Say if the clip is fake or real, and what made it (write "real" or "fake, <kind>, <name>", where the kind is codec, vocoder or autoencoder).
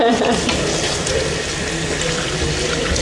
real